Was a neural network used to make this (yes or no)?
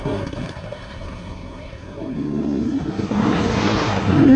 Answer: yes